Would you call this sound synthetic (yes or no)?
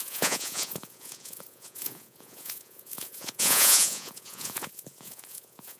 yes